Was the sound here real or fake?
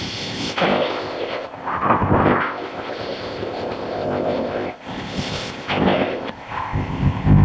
fake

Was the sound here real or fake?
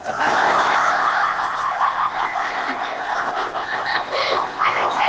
fake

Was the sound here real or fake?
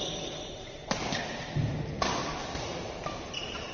real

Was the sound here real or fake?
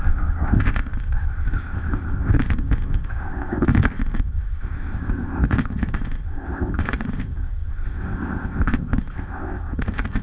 fake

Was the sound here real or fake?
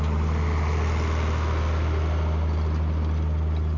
real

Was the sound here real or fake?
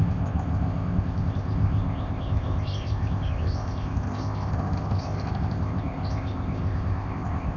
fake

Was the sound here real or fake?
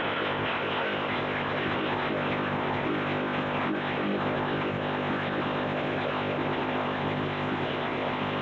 fake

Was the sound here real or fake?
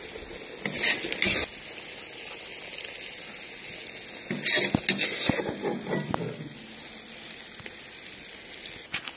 real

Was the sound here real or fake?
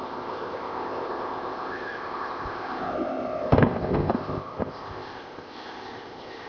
fake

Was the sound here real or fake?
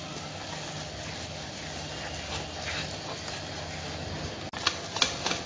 real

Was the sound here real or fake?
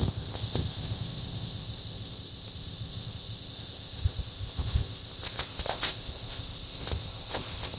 fake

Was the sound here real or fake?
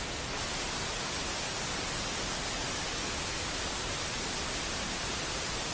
real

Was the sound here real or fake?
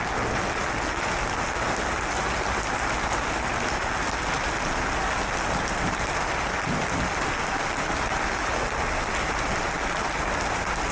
real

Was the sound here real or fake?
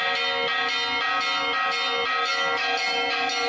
real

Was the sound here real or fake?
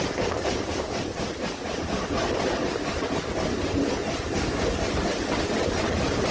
real